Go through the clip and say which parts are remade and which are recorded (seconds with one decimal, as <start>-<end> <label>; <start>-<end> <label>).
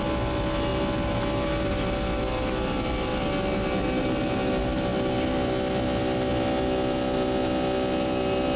0.0-8.6 recorded